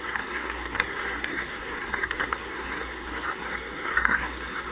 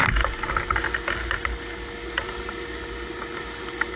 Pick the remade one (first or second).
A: first